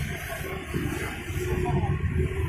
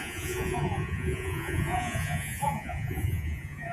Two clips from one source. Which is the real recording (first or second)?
first